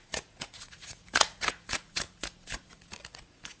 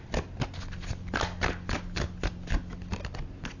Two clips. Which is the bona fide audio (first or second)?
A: second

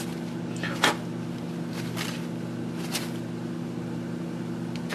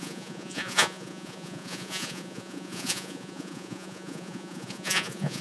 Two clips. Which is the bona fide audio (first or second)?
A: first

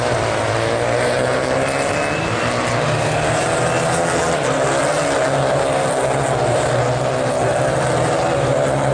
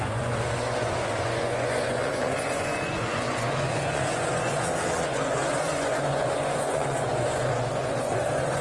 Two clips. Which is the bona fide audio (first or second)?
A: first